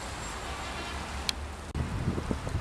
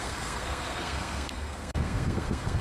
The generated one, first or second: second